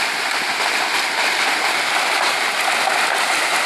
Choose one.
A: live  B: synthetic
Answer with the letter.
A